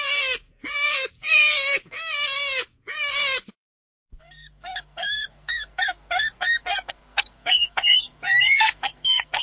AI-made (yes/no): yes